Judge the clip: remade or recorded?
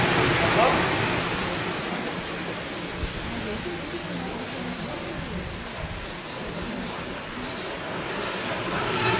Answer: recorded